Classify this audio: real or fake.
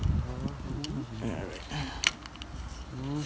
real